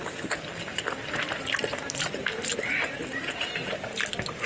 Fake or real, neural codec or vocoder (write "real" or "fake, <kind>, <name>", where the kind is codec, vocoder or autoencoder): real